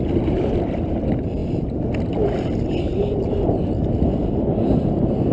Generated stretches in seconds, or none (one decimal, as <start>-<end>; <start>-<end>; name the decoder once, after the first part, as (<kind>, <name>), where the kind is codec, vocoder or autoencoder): none